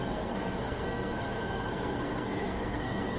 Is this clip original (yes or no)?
no